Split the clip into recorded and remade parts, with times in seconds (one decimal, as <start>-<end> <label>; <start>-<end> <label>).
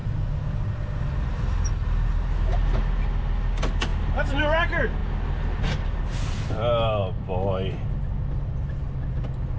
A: 0.0-9.6 recorded